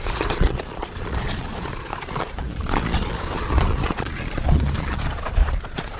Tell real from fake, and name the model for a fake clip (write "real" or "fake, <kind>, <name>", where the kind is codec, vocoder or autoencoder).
fake, vocoder, Vocos